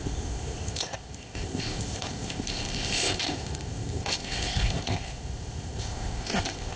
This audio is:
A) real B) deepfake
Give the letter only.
B